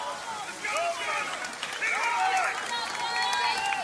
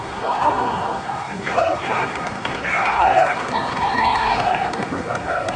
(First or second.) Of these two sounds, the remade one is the second